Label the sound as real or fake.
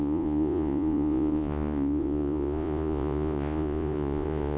fake